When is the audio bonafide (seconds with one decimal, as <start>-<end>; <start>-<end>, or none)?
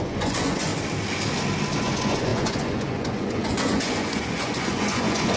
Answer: 0.7-1.8